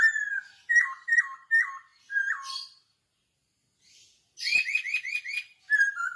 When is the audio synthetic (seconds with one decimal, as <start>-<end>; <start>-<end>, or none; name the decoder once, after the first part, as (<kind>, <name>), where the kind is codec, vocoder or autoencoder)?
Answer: none